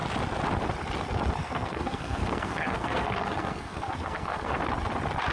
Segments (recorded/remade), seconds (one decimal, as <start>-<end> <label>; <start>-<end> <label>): 0.0-1.4 recorded; 1.4-4.6 remade; 4.6-5.3 recorded